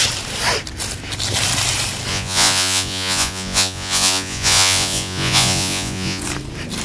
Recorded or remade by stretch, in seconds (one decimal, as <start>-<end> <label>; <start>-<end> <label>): 0.0-2.1 recorded; 2.1-6.2 remade; 6.2-6.8 recorded